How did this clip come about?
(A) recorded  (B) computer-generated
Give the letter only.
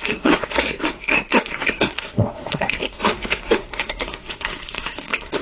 B